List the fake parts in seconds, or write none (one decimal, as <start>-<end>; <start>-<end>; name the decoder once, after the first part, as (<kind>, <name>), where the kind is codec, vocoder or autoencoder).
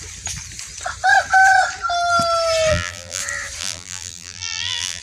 2.7-3.2 (vocoder, BigVGAN v2); 3.6-5.0